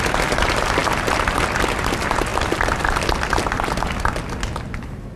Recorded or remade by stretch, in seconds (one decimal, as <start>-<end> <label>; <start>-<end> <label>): 0.0-5.2 recorded